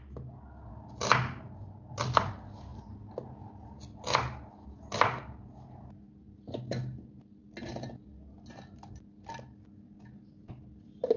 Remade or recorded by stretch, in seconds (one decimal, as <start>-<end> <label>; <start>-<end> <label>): 0.0-11.2 recorded